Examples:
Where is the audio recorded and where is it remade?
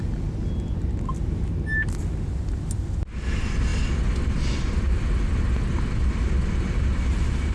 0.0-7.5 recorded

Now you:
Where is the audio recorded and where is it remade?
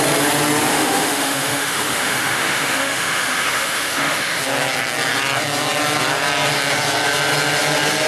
0.0-0.7 recorded; 0.7-4.4 remade; 4.4-8.1 recorded